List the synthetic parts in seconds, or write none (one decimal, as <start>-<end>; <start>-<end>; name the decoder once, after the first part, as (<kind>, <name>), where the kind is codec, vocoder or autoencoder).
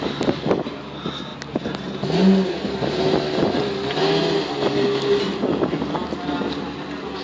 none